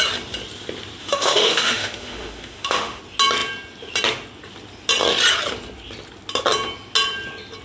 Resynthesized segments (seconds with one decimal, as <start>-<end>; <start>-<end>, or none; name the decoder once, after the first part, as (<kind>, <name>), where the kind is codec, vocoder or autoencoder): 1.0-3.0 (autoencoder, DAC-VAE)